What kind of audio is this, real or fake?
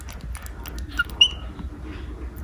real